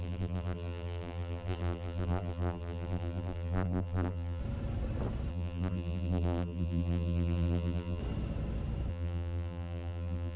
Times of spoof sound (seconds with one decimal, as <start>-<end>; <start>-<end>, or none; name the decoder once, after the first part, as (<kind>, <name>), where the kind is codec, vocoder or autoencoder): 0.0-4.4 (vocoder, BigVGAN v2); 5.3-8.0; 8.9-10.4